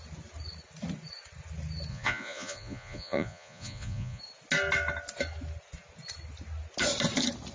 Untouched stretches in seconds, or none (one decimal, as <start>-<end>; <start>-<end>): 0.0-1.9; 4.2-7.5